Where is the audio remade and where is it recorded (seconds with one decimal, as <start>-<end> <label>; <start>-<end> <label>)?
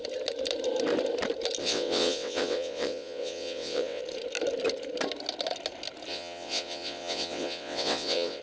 0.0-1.6 recorded; 1.6-4.0 remade; 4.0-6.1 recorded; 6.1-8.4 remade